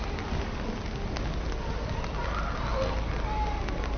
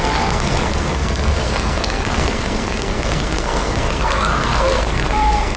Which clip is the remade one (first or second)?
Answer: second